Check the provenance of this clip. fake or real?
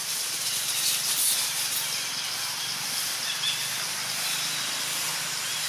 real